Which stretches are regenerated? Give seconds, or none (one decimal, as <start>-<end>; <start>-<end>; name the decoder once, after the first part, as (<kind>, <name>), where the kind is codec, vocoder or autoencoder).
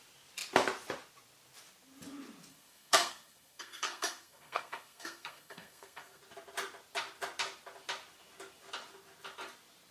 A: 2.5-6.2 (codec, SNAC)